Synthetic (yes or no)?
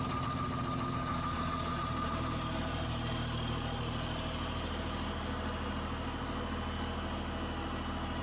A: no